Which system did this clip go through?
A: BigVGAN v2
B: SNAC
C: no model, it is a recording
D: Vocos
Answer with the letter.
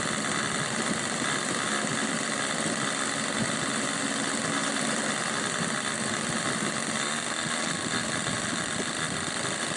C